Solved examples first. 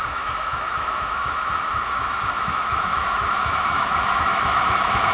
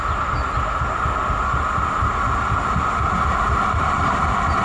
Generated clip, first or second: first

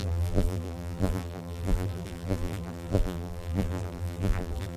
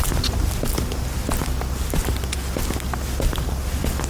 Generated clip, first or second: first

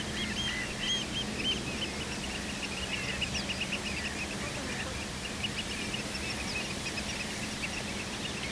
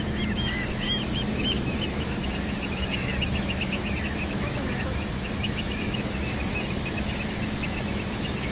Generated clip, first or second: second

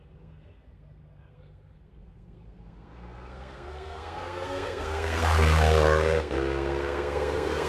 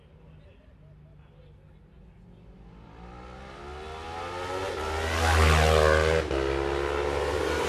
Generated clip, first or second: first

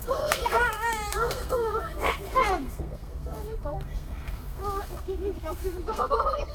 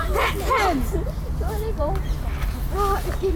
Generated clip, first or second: first